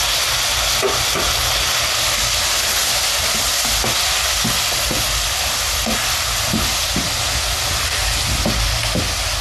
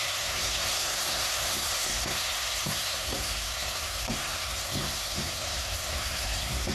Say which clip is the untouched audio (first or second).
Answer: first